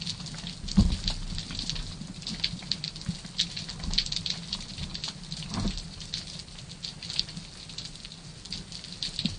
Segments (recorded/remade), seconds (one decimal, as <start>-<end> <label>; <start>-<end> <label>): 0.0-9.4 recorded